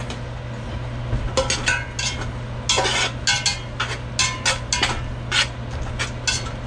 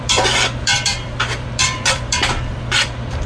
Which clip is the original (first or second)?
first